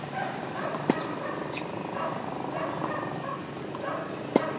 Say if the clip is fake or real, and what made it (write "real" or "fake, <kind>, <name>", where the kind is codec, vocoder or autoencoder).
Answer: fake, vocoder, BigVGAN v2